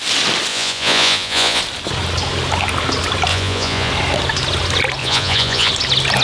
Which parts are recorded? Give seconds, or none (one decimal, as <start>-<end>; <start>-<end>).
0.0-0.5; 1.6-3.3; 3.9-5.0; 5.7-6.2